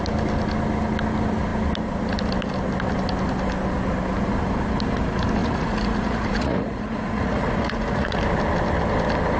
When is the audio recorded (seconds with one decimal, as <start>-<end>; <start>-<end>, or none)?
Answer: 0.0-5.4; 8.2-9.4